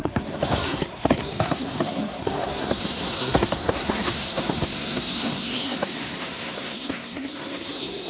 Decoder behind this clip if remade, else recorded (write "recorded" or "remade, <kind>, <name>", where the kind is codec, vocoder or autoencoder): remade, codec, SNAC